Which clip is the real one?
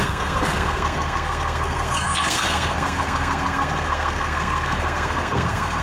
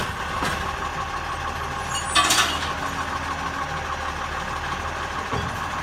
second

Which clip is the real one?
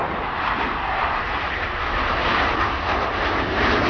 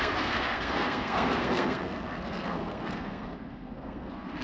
first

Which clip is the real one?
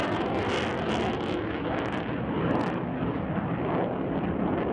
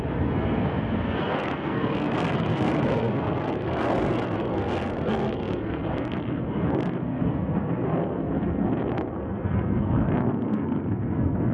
first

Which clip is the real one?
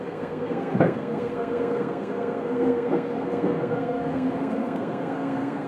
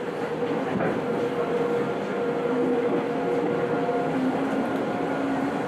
second